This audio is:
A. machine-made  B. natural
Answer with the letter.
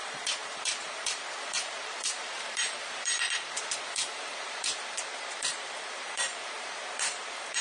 A